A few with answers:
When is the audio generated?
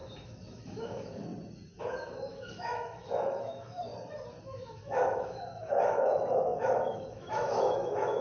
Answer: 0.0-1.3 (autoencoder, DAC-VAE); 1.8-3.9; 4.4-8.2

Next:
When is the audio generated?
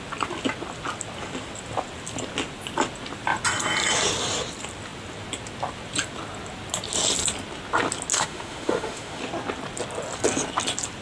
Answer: 8.1-9.2 (autoencoder, DAC-VAE)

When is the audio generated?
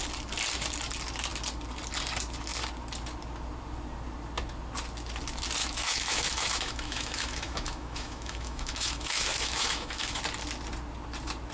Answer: 5.6-10.2 (autoencoder, DAC-VAE)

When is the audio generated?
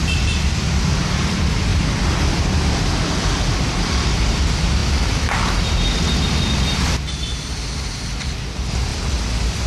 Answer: 0.0-4.8 (vocoder, BigVGAN v2); 7.1-8.9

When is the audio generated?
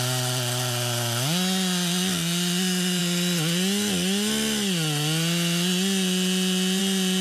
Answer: none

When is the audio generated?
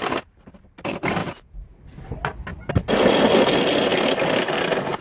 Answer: 1.2-1.8 (vocoder, Vocos)